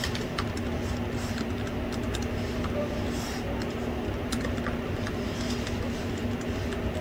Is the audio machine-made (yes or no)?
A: no